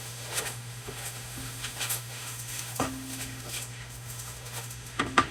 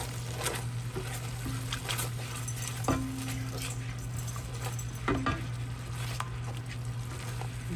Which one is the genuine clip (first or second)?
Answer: second